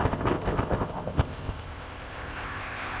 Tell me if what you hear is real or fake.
fake